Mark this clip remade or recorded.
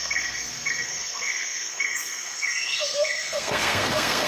remade